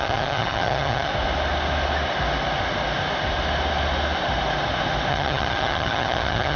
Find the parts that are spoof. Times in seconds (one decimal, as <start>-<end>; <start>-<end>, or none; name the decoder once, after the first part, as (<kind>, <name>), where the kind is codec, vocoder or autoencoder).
0.0-1.1 (vocoder, HiFi-GAN); 5.1-6.6